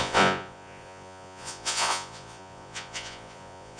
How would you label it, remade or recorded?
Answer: remade